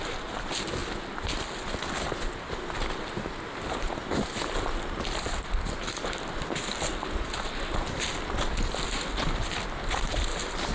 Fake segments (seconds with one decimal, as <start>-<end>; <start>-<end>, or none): none